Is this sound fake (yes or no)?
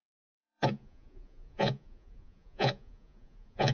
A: yes